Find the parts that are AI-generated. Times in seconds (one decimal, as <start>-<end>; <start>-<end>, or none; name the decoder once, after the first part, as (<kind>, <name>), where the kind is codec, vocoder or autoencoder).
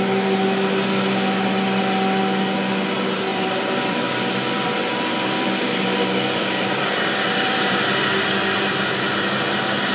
3.3-7.8 (vocoder, BigVGAN v2)